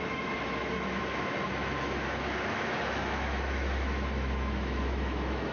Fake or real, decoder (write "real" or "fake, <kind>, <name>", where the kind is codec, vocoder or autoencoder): fake, autoencoder, DAC-VAE